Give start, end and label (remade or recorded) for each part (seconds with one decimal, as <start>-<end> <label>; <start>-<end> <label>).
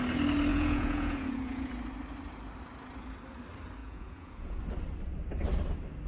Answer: 0.0-0.5 recorded; 0.5-1.7 remade; 1.7-3.8 recorded; 3.8-4.6 remade; 4.6-6.1 recorded